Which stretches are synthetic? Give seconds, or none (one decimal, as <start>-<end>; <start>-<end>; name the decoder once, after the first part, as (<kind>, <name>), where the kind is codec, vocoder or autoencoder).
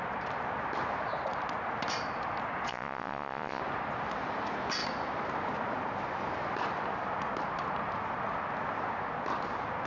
2.7-3.6 (vocoder, Vocos)